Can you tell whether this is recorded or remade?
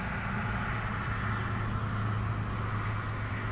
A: recorded